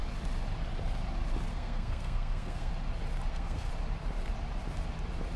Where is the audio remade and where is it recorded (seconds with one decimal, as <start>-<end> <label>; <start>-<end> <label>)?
0.0-1.5 recorded; 1.5-2.7 remade; 2.7-3.3 recorded; 3.3-3.7 remade; 3.7-5.4 recorded